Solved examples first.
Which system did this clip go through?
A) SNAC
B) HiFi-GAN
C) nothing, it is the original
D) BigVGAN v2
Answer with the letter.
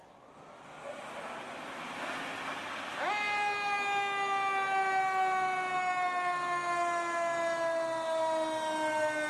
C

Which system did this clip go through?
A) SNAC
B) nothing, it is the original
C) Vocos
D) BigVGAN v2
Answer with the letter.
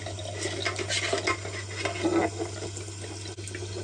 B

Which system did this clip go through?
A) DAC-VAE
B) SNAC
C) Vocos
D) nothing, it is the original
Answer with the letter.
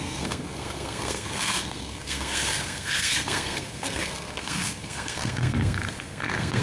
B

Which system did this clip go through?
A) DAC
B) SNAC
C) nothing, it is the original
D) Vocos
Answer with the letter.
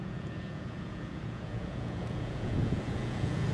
D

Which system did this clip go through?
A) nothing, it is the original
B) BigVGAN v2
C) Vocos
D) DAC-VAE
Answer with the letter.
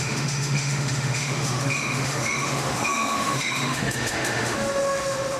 D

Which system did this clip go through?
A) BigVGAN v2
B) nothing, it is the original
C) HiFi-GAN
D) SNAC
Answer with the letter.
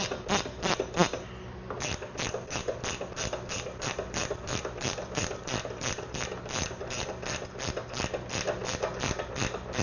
B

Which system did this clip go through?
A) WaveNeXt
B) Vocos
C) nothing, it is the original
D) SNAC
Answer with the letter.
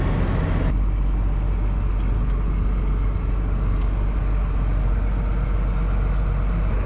C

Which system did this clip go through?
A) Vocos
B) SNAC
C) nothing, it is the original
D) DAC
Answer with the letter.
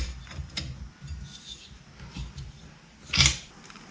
C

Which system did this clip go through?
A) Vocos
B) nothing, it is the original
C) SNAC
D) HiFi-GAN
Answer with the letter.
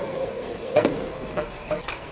C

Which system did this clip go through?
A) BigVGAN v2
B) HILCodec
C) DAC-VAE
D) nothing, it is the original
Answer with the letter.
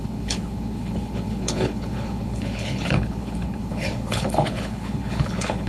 B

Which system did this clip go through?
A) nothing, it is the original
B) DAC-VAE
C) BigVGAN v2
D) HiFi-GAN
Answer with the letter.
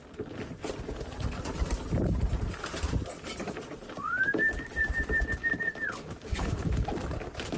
C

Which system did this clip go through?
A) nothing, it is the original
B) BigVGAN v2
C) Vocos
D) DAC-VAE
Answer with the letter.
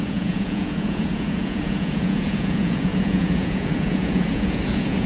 C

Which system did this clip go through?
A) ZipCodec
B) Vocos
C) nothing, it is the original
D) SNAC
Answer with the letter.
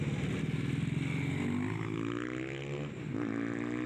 C